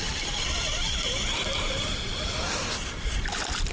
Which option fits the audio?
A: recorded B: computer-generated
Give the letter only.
A